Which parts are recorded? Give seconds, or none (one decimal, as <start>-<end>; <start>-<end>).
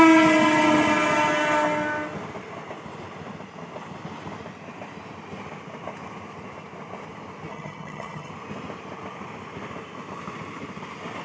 0.0-7.5; 8.3-11.2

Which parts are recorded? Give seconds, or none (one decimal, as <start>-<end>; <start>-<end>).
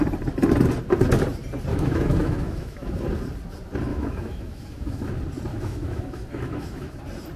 0.0-1.7; 3.0-3.9; 5.1-5.5; 7.0-7.4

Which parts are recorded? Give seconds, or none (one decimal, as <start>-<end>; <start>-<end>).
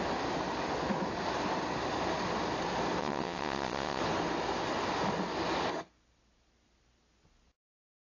0.0-3.0; 4.0-8.0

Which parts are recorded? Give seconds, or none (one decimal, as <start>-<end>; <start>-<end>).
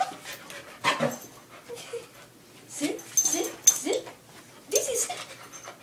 0.0-5.8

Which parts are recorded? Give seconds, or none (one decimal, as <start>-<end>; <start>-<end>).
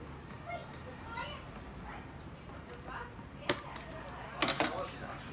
0.0-5.3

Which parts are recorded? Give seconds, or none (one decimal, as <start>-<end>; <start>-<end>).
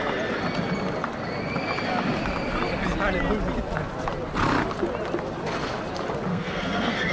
0.0-6.3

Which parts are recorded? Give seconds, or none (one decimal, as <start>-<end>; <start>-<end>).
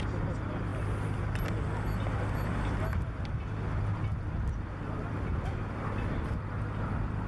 0.0-7.3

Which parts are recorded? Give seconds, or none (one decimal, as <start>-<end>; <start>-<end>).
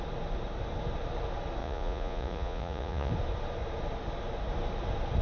0.0-1.6; 3.1-5.2